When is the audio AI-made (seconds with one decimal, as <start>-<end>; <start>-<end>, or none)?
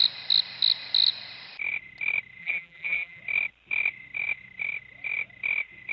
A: 2.4-3.2